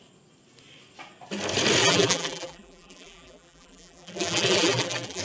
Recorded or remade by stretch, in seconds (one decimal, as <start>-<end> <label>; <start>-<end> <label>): 0.0-1.8 recorded; 1.8-5.2 remade